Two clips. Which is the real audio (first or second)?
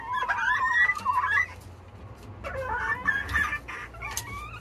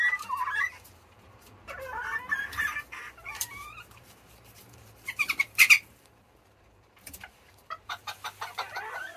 first